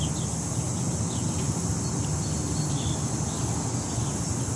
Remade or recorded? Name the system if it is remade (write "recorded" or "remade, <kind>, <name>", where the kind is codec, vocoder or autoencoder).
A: recorded